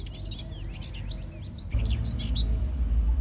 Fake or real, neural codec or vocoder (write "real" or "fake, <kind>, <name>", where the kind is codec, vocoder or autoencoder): real